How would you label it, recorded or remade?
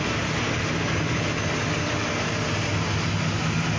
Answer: recorded